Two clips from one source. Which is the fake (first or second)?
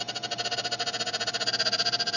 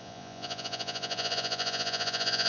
second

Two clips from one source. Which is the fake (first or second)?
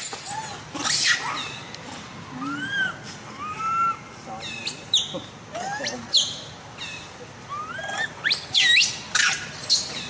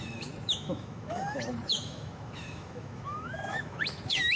second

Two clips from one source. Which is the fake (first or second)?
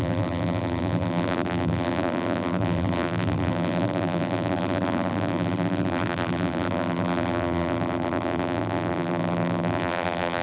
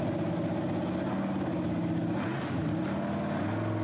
first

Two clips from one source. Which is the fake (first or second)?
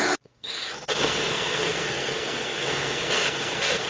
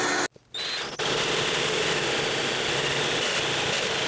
first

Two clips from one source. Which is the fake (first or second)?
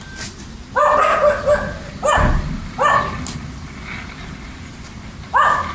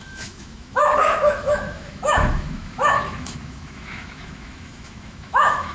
second